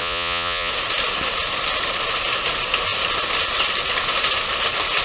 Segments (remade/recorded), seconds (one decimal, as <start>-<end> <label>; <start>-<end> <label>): 0.0-0.7 remade; 0.7-5.0 recorded